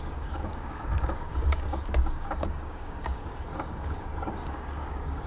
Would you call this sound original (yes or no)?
no